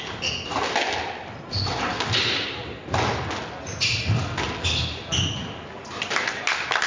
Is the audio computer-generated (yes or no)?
no